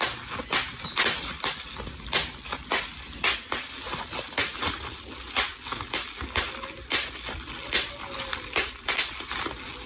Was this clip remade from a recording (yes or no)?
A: no